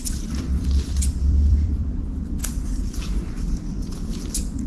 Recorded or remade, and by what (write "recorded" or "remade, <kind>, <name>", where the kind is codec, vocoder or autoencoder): remade, vocoder, BigVGAN v2